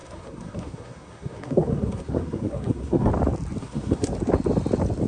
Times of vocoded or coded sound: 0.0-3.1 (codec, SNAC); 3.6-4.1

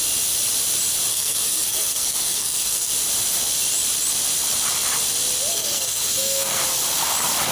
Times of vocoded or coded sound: 1.1-2.9 (codec, SNAC); 5.5-6.6